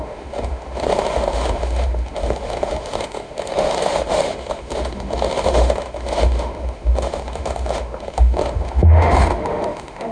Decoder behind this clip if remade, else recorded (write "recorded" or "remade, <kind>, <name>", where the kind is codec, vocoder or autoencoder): remade, autoencoder, DAC-VAE